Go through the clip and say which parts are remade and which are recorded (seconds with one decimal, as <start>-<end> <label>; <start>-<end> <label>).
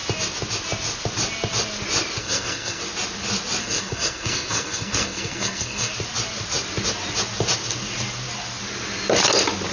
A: 0.0-2.2 recorded; 2.2-2.8 remade; 2.8-3.6 recorded; 3.6-5.9 remade; 5.9-9.7 recorded